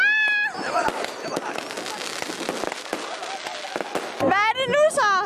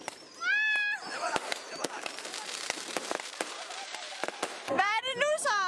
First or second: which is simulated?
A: second